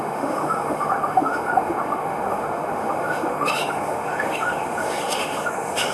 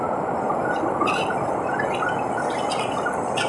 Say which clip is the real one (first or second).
second